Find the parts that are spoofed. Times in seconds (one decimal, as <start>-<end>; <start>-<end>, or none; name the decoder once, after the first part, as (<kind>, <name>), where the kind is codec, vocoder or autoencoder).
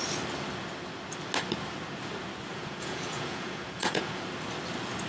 2.5-4.2 (vocoder, Vocos)